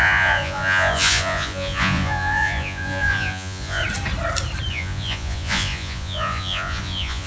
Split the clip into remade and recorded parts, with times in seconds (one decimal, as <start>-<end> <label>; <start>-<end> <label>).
0.0-3.8 remade; 3.8-4.7 recorded; 4.7-7.3 remade